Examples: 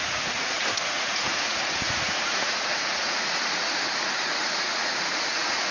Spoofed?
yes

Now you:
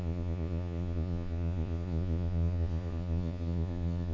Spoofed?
yes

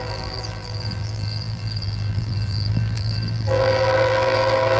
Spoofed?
yes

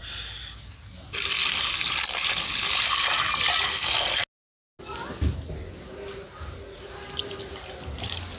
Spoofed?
no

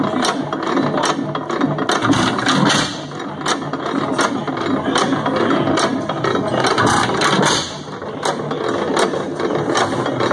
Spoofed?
no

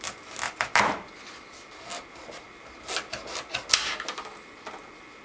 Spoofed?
no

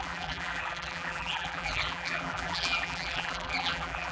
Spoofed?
yes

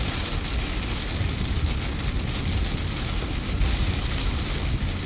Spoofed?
no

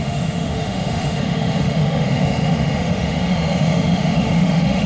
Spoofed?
yes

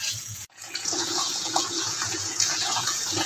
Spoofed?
yes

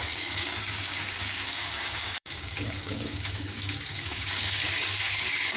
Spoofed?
yes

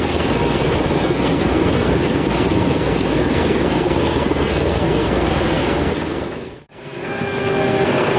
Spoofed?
yes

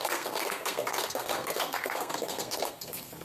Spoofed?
yes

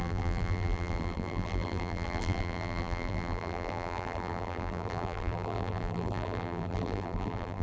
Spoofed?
yes